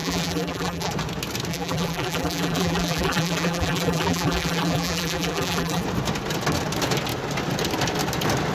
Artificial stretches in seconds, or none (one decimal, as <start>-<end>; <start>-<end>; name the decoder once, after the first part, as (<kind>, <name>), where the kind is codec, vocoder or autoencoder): 0.0-0.9 (vocoder, BigVGAN v2); 1.5-5.8